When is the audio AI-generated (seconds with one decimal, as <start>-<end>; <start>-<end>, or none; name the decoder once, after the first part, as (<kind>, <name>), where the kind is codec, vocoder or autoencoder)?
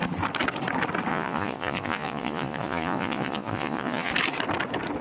1.1-4.1 (vocoder, Vocos)